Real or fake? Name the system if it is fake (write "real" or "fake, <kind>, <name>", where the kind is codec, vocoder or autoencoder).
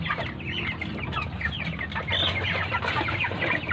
real